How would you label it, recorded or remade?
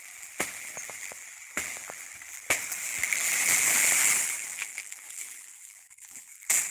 remade